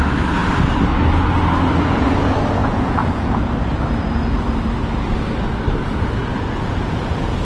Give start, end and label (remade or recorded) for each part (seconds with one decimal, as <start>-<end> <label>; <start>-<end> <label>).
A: 0.0-2.6 recorded; 2.6-3.5 remade; 3.5-6.2 recorded; 6.2-7.4 remade